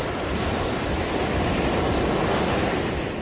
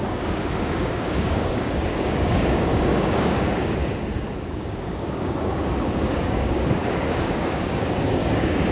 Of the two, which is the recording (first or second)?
first